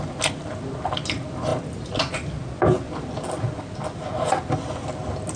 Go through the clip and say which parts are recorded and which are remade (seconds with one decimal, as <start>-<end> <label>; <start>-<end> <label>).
0.0-5.4 recorded